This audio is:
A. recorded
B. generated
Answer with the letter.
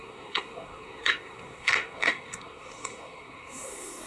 B